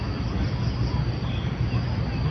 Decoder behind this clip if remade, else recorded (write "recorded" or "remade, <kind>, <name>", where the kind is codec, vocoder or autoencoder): recorded